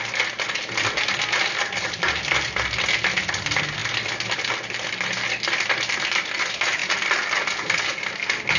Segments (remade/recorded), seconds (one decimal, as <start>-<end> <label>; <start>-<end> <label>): 0.0-8.6 recorded